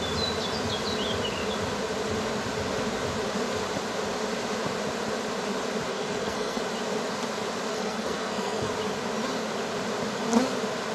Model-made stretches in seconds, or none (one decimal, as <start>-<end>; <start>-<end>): 5.9-6.6; 7.7-8.7